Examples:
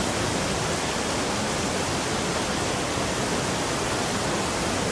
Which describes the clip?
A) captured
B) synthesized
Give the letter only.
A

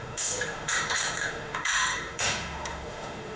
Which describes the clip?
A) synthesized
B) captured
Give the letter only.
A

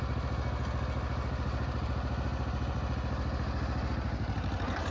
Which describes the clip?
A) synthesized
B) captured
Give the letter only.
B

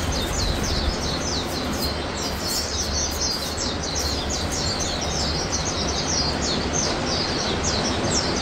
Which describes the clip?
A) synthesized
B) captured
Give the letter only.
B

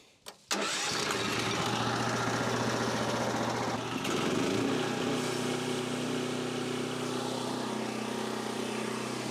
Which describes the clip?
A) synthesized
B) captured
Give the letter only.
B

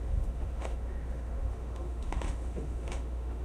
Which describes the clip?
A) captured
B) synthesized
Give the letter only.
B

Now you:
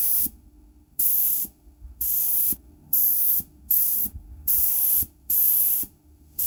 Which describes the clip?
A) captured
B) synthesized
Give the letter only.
B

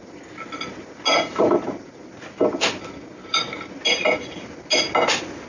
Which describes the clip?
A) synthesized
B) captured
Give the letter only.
B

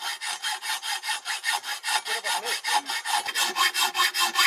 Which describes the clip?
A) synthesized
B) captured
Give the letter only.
B